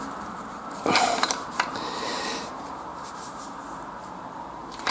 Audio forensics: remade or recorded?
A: remade